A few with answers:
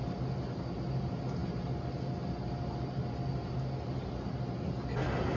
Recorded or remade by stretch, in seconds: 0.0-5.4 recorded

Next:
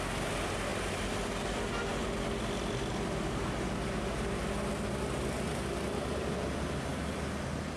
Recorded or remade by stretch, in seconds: 0.0-7.8 recorded

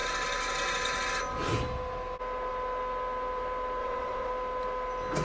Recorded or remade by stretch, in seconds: 0.0-3.8 recorded; 3.8-4.3 remade; 4.3-5.2 recorded

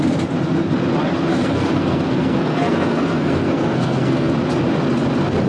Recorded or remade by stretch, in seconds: 0.0-1.3 recorded; 1.3-4.3 remade; 4.3-5.5 recorded

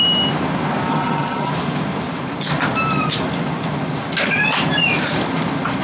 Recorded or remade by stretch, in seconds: 0.0-0.9 recorded; 0.9-1.5 remade; 1.5-5.8 recorded

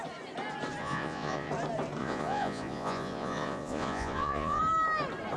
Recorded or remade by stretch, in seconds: 0.0-0.8 recorded; 0.8-1.5 remade; 1.5-2.0 recorded; 2.0-4.6 remade; 4.6-5.4 recorded